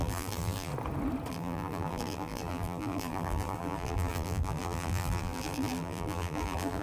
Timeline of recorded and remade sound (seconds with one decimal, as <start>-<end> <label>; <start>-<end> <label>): 0.0-0.7 remade; 0.7-1.3 recorded; 1.3-6.8 remade